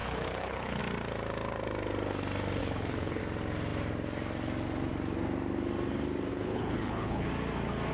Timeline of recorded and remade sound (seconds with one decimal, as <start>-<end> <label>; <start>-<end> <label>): 0.0-0.8 remade; 0.8-2.6 recorded; 2.6-3.2 remade; 3.2-6.3 recorded; 6.3-7.3 remade; 7.3-7.9 recorded